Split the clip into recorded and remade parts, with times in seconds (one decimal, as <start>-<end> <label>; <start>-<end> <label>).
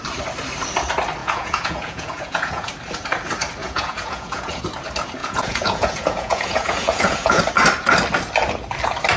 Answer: 0.0-1.2 recorded; 1.2-2.7 remade; 2.7-3.6 recorded; 3.6-4.6 remade; 4.6-5.2 recorded; 5.2-7.4 remade; 7.4-9.2 recorded